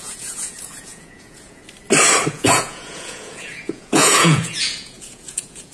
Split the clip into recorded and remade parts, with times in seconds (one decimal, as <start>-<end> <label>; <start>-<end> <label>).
0.0-1.6 remade; 1.6-2.3 recorded; 2.3-5.7 remade

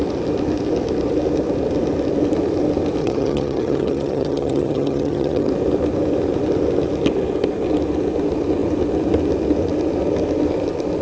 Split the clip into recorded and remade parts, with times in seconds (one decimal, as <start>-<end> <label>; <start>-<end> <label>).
0.0-3.0 recorded; 3.0-5.5 remade; 5.5-11.0 recorded

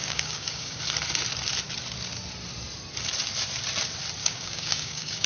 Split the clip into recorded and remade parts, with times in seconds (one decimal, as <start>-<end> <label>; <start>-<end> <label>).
0.0-0.8 remade; 0.8-4.2 recorded; 4.2-5.3 remade

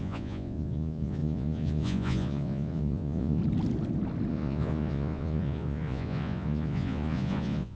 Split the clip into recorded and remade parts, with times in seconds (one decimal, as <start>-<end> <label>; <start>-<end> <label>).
0.0-3.4 remade; 3.4-4.3 recorded; 4.3-7.8 remade

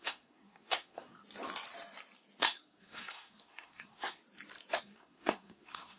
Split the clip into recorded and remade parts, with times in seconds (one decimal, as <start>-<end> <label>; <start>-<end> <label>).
0.0-1.2 remade; 1.2-2.4 recorded; 2.4-4.2 remade; 4.2-4.8 recorded; 4.8-6.0 remade

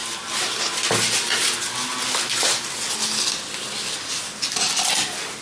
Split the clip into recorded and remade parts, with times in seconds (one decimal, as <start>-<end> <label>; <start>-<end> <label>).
0.0-5.4 recorded